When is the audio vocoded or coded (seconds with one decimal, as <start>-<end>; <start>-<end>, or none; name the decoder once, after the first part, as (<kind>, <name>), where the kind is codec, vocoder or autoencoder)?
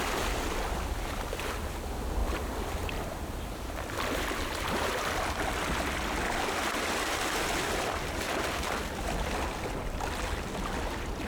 none